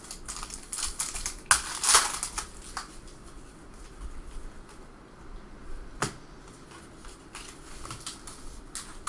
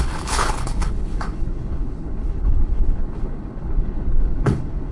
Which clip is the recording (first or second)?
first